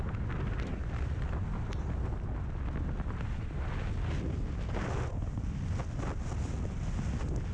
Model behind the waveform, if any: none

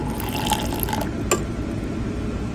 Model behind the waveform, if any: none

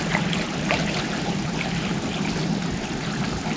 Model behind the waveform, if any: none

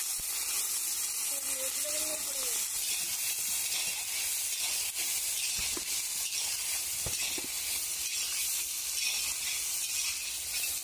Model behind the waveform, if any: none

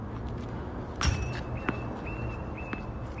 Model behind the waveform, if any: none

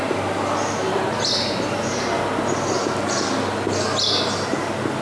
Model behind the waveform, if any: none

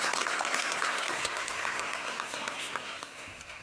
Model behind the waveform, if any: codec, SNAC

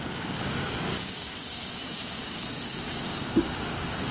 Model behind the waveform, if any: codec, DAC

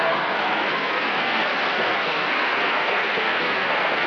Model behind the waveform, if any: codec, SNAC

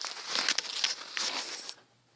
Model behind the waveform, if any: none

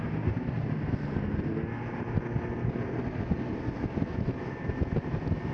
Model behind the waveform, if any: none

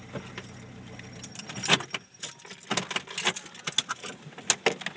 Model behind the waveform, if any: none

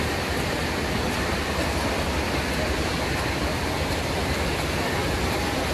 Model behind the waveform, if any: none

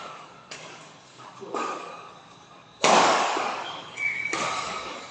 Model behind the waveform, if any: codec, DAC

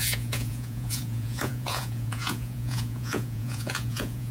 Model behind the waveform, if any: vocoder, Vocos